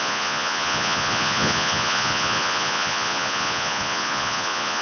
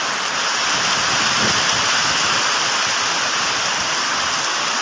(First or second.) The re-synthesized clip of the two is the first